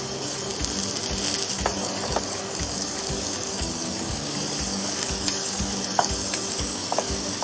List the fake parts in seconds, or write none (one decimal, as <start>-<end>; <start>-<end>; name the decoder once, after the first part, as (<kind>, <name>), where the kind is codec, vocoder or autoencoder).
0.0-0.5 (codec, DAC); 1.5-7.4